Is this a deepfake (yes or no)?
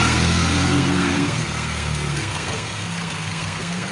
yes